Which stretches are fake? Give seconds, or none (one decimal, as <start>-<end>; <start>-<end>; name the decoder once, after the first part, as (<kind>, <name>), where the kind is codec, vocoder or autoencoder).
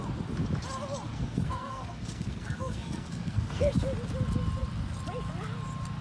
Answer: 1.1-3.7 (codec, SNAC)